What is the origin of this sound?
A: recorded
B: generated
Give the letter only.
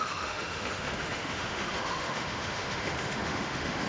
B